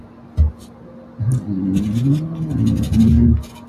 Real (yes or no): yes